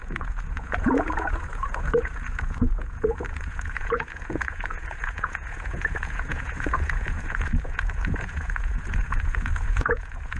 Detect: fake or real fake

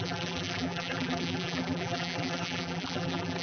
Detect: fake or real fake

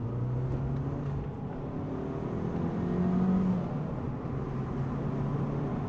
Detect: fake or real real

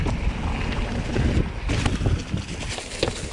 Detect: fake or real real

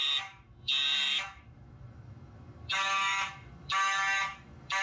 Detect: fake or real fake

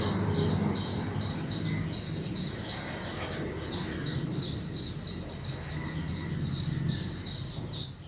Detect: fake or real real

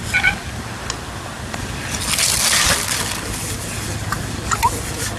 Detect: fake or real real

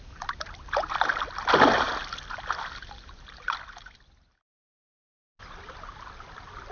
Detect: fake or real real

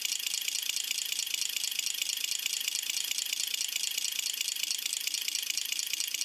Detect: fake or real real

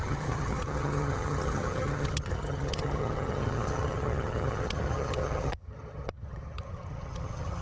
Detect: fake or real fake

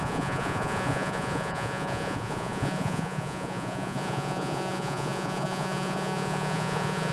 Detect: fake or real fake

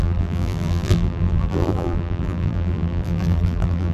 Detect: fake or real fake